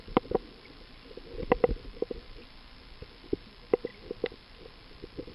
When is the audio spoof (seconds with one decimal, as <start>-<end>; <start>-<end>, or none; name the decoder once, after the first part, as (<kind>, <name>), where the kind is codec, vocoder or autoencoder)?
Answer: none